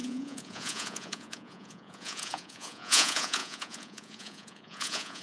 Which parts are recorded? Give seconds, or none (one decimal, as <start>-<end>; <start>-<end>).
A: none